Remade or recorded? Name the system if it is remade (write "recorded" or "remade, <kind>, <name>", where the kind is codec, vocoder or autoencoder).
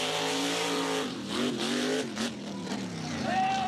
remade, vocoder, BigVGAN v2